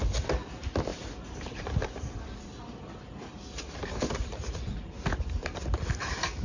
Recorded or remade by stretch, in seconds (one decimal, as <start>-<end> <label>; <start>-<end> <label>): 0.0-6.4 recorded